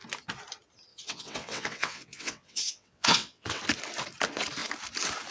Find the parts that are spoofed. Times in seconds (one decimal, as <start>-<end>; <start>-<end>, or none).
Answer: 0.9-3.6